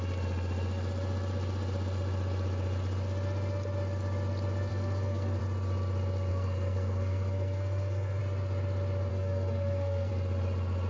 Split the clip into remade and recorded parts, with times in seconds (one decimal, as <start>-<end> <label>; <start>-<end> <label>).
0.0-4.7 recorded; 4.7-5.4 remade; 5.4-6.3 recorded; 6.3-8.2 remade; 8.2-9.1 recorded; 9.1-10.1 remade; 10.1-10.9 recorded